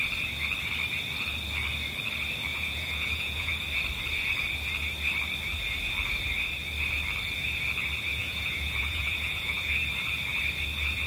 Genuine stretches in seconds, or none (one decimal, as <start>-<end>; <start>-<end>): 0.0-2.5; 3.5-8.2; 9.7-11.1